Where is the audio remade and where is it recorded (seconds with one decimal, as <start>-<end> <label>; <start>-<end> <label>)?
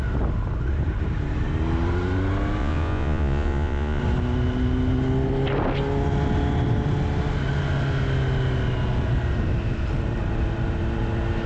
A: 0.0-2.6 recorded; 2.6-4.0 remade; 4.0-11.5 recorded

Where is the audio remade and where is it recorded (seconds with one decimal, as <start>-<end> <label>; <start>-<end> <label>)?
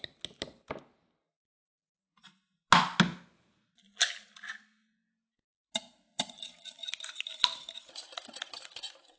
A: 0.0-6.1 recorded; 6.1-6.8 remade; 6.8-9.2 recorded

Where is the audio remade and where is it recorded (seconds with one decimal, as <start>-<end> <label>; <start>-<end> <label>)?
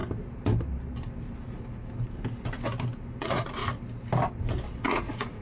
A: 0.0-3.2 recorded; 3.2-3.6 remade; 3.6-4.8 recorded; 4.8-5.4 remade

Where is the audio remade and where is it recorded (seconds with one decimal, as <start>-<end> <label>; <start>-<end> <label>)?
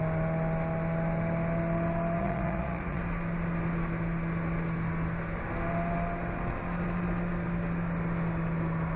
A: 0.0-2.2 recorded; 2.2-3.0 remade; 3.0-9.0 recorded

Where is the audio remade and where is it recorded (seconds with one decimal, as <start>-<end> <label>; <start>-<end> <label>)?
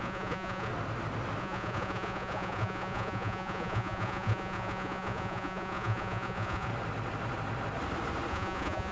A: 0.0-0.7 remade; 0.7-1.4 recorded; 1.4-6.7 remade; 6.7-8.3 recorded; 8.3-8.9 remade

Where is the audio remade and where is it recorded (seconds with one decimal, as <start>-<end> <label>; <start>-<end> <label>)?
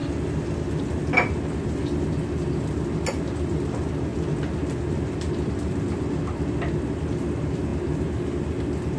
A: 0.0-9.0 recorded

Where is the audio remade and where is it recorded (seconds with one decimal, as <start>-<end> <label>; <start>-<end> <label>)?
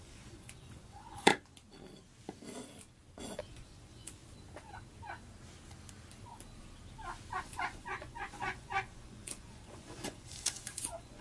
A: 0.0-1.3 remade; 1.3-3.2 recorded; 3.2-4.2 remade; 4.2-7.4 recorded; 7.4-11.2 remade